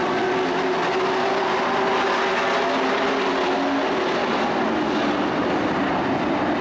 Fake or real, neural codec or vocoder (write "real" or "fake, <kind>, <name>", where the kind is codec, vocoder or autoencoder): real